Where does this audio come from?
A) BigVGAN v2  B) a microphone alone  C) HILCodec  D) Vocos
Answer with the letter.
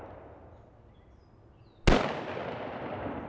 B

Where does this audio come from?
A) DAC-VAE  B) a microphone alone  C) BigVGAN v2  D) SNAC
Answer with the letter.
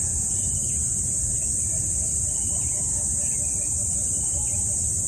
C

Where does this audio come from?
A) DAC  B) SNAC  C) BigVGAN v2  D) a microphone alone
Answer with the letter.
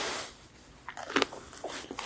C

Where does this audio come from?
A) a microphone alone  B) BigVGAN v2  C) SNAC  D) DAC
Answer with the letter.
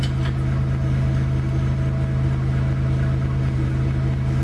A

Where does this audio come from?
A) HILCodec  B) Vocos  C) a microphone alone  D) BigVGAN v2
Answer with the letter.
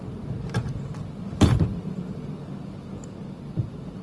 C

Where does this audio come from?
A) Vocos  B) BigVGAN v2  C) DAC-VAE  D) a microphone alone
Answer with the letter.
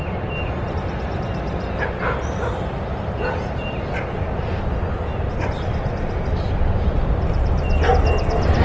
D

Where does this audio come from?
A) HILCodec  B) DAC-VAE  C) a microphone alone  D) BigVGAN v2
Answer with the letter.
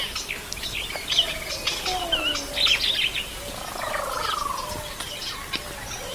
C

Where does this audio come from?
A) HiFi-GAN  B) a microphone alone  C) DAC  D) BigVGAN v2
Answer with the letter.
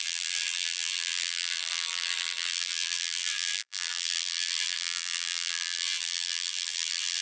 D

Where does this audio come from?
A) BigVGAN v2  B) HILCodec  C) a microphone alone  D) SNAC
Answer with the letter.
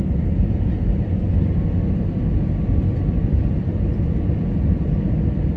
A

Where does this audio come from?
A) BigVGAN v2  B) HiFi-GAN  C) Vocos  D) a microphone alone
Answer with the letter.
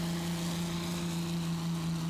D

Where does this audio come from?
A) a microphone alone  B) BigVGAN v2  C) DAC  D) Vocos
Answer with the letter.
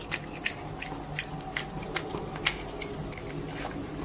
A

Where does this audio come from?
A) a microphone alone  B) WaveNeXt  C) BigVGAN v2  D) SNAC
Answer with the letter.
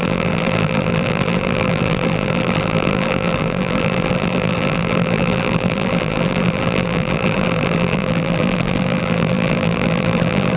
C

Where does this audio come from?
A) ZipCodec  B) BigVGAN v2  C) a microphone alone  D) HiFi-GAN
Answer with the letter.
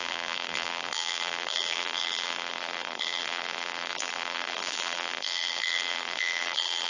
B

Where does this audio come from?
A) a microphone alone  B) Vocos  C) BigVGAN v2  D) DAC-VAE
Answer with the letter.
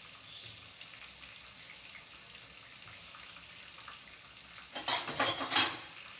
A